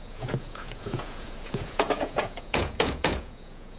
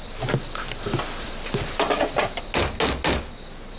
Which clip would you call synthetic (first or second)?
first